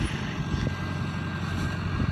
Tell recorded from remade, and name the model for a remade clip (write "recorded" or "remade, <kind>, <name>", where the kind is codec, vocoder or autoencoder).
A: recorded